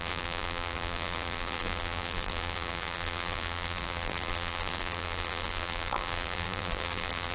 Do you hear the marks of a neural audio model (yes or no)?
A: yes